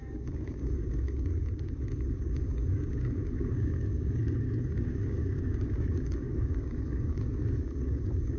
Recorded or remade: remade